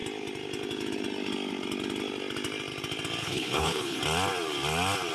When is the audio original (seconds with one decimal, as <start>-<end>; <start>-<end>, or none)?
0.0-3.2; 4.0-5.1